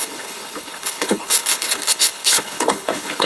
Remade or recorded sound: remade